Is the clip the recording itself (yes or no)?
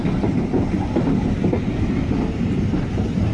yes